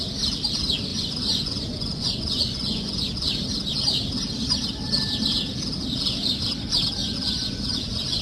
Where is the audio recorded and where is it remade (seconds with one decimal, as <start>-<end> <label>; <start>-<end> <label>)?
0.0-0.9 recorded; 0.9-3.1 remade; 3.1-7.0 recorded; 7.0-8.2 remade

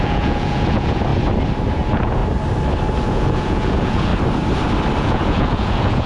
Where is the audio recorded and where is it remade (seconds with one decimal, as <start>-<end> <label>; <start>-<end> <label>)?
0.0-1.1 remade; 1.1-1.7 recorded; 1.7-2.2 remade; 2.2-3.0 recorded; 3.0-4.1 remade; 4.1-5.0 recorded; 5.0-6.1 remade

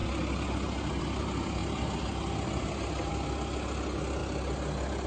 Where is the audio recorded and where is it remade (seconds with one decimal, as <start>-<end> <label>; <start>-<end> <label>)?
0.0-5.1 recorded

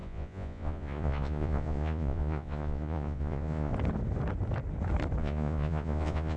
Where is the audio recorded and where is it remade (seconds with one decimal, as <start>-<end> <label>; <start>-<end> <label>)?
0.0-3.7 remade; 3.7-5.2 recorded; 5.2-6.4 remade

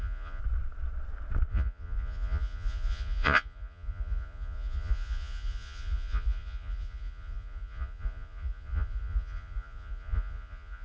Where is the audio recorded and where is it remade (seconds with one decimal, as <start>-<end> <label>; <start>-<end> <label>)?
0.0-0.4 remade; 0.4-1.5 recorded; 1.5-10.8 remade

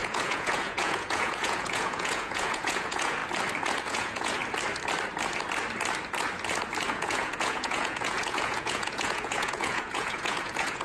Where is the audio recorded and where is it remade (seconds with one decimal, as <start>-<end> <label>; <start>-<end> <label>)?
0.0-3.2 remade; 3.2-3.8 recorded; 3.8-4.4 remade; 4.4-6.9 recorded; 6.9-10.8 remade

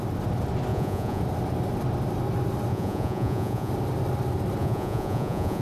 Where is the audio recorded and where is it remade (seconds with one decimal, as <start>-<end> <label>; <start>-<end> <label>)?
0.0-0.7 recorded; 0.7-1.2 remade; 1.2-2.7 recorded; 2.7-3.7 remade; 3.7-4.6 recorded; 4.6-5.6 remade

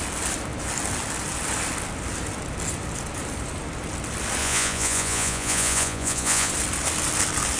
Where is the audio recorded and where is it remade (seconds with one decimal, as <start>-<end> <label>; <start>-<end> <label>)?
0.0-4.4 recorded; 4.4-6.5 remade; 6.5-7.6 recorded